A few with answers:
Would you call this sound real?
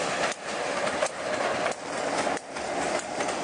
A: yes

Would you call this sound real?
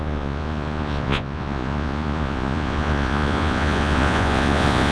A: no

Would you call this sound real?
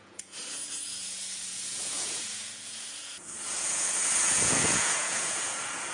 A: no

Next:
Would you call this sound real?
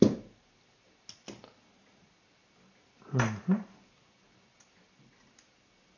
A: yes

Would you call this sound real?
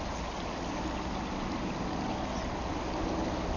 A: yes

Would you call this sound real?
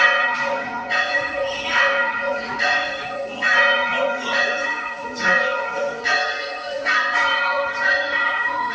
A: no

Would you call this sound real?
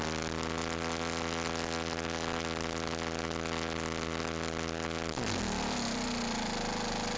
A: yes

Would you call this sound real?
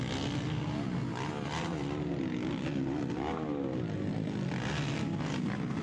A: yes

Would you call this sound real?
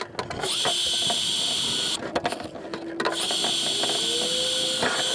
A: yes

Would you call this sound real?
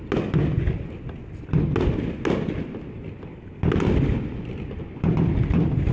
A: yes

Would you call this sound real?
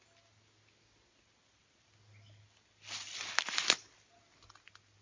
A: yes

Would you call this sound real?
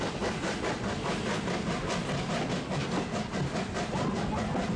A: yes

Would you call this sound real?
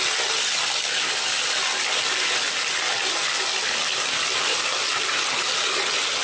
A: yes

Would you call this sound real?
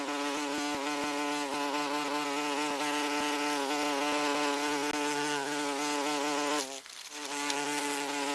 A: yes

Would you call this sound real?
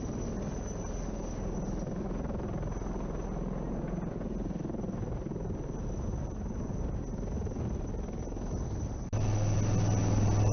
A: yes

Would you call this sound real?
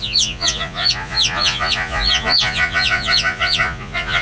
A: no